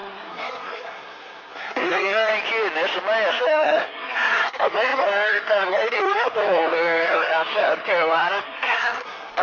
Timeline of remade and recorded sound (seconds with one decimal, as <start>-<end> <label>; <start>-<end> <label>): 0.0-2.3 remade; 2.3-3.3 recorded; 3.3-9.4 remade